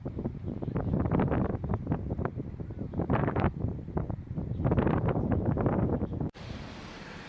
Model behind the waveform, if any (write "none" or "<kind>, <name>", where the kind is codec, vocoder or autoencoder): vocoder, BigVGAN v2